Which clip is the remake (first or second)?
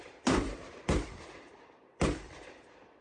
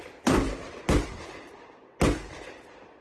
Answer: first